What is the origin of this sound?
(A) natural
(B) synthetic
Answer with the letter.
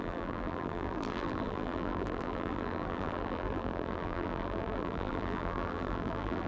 B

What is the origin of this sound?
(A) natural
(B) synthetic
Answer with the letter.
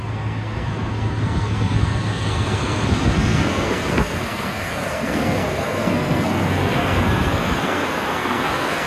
B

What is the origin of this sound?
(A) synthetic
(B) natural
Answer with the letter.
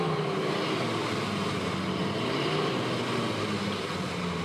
B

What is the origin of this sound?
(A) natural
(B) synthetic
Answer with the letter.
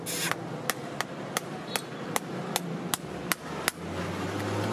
A